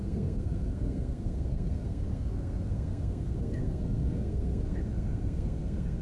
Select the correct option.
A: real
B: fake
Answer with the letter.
B